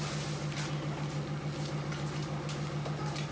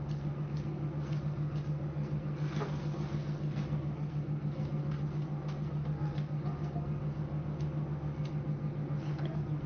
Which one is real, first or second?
first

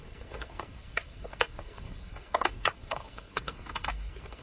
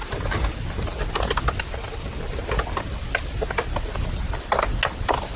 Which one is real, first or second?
second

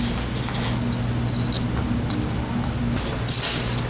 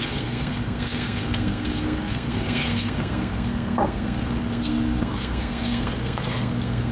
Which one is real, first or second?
first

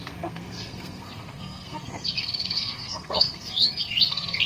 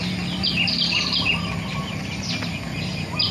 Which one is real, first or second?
second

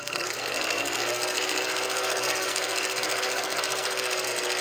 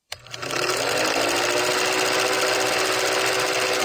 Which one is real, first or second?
second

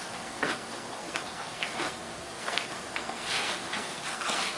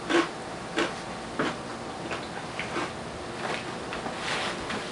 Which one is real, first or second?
second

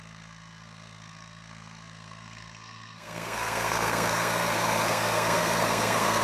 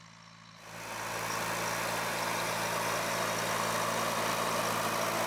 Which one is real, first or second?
second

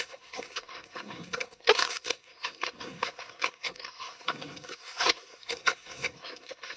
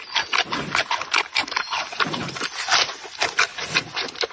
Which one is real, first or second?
second